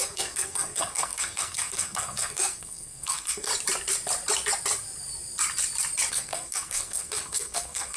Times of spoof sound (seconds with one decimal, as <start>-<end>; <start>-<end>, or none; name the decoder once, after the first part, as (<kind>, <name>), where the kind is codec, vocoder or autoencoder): 0.0-3.5 (codec, SNAC); 6.1-8.0